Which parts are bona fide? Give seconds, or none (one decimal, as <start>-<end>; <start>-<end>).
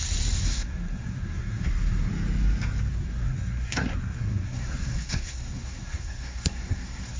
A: 0.0-0.4; 2.1-2.9